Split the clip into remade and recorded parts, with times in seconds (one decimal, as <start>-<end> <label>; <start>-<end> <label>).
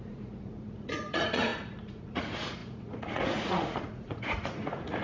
0.0-5.0 remade